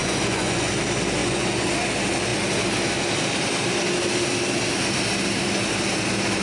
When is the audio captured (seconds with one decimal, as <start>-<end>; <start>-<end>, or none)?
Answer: 0.7-1.2; 1.7-6.4